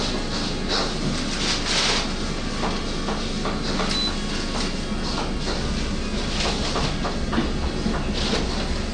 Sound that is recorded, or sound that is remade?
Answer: recorded